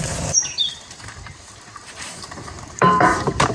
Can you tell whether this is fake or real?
fake